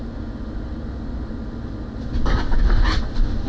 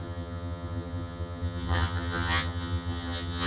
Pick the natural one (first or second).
first